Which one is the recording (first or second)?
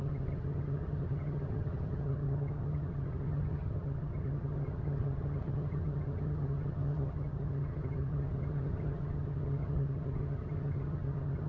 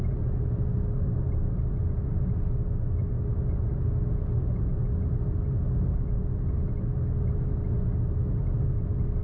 second